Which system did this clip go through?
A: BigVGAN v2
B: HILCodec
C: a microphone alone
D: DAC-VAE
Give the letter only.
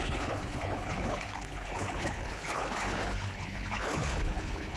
B